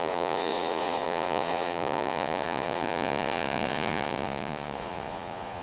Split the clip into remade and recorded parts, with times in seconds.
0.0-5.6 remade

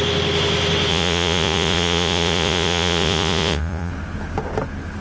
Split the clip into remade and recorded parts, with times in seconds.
0.0-0.9 recorded; 0.9-3.9 remade; 3.9-5.0 recorded

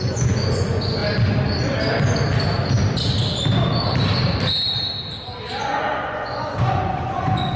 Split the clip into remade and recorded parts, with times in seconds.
0.0-1.0 remade; 1.0-5.6 recorded; 5.6-7.6 remade

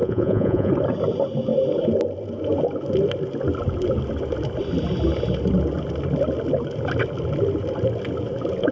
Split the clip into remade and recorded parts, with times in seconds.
0.0-0.7 remade; 0.7-8.7 recorded

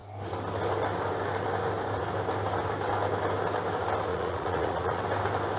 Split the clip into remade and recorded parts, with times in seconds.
0.0-4.1 recorded; 4.1-5.0 remade; 5.0-5.6 recorded